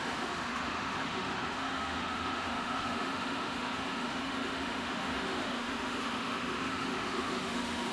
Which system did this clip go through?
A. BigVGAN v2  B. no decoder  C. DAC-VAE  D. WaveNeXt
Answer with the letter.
C